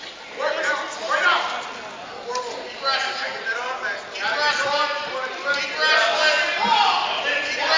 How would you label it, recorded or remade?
recorded